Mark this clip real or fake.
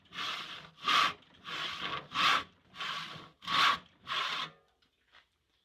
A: real